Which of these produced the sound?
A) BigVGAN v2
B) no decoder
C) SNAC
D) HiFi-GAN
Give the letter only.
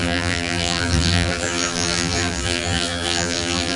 A